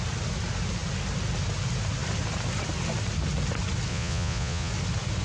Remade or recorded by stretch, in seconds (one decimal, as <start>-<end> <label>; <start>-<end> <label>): 0.0-3.9 recorded; 3.9-4.7 remade; 4.7-5.2 recorded